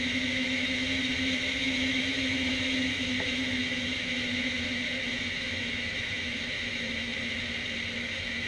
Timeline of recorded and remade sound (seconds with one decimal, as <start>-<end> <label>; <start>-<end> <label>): 0.0-7.1 remade; 7.1-8.0 recorded; 8.0-8.5 remade